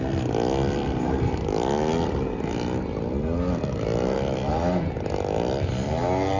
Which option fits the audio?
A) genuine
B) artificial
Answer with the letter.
A